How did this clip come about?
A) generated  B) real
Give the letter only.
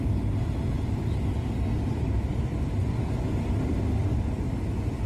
B